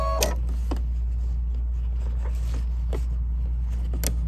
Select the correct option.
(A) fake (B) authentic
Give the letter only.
B